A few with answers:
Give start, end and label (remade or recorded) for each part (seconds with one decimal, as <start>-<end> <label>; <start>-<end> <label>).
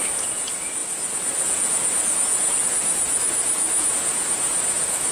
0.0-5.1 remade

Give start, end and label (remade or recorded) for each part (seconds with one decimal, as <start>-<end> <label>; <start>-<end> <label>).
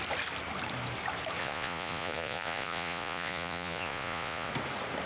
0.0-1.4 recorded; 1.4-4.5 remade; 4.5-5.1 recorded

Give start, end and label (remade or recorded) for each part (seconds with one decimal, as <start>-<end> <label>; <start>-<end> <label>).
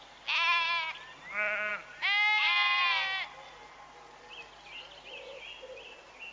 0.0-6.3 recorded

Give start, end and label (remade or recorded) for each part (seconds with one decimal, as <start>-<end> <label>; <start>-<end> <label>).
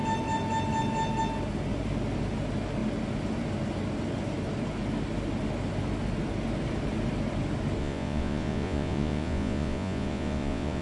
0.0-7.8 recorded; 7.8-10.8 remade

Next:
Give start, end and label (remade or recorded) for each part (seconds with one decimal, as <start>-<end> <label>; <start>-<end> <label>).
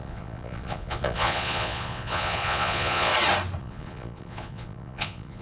0.0-3.1 remade; 3.1-3.6 recorded; 3.6-5.4 remade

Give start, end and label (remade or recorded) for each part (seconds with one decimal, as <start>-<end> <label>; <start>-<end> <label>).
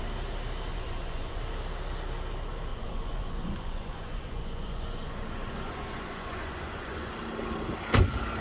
0.0-0.7 recorded; 0.7-1.4 remade; 1.4-2.7 recorded; 2.7-7.1 remade; 7.1-8.4 recorded